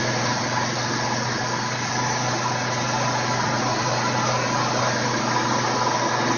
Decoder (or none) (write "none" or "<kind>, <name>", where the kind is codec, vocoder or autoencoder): none